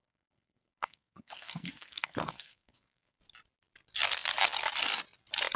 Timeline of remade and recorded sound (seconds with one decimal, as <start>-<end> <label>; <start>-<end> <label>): 0.0-3.2 remade; 3.2-5.6 recorded